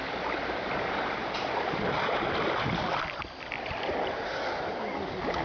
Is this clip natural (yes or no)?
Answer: yes